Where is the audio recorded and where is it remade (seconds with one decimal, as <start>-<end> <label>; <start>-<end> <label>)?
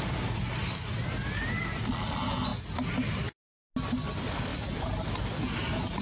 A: 0.0-6.0 recorded